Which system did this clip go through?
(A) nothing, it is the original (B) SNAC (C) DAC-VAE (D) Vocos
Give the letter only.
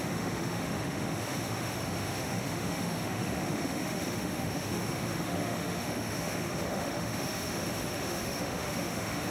C